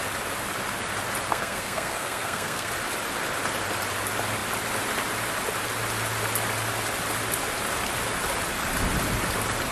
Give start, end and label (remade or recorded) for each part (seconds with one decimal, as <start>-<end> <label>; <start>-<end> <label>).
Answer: 0.0-1.3 recorded; 1.3-2.7 remade; 2.7-9.7 recorded